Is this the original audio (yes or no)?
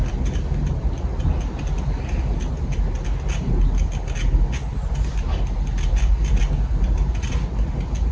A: yes